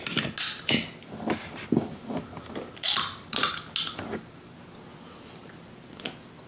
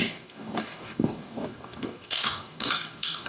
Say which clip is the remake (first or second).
second